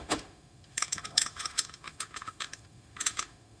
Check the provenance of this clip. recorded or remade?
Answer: remade